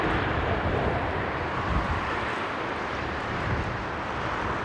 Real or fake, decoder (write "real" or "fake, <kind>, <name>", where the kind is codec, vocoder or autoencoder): fake, vocoder, BigVGAN v2